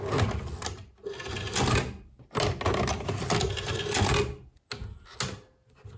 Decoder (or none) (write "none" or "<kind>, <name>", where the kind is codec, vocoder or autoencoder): none